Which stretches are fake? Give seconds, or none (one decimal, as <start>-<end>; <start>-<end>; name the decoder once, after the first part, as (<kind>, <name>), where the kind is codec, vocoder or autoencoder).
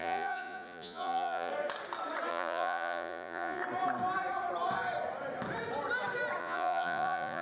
0.0-1.5 (vocoder, Vocos); 2.3-3.6; 6.4-7.4